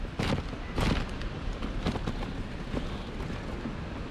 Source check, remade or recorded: recorded